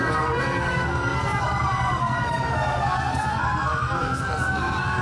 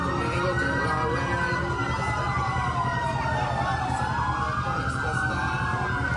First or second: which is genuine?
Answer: second